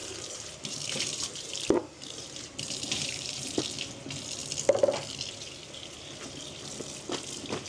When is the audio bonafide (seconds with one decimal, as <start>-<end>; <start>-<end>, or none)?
3.6-7.7